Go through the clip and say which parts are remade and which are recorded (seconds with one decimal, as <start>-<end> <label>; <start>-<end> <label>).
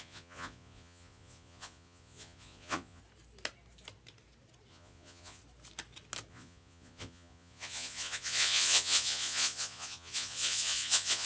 0.0-3.0 remade; 3.0-4.7 recorded; 4.7-5.4 remade; 5.4-6.3 recorded; 6.3-11.3 remade